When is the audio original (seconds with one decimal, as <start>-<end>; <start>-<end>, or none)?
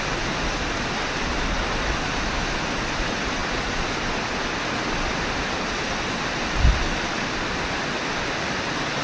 0.0-9.0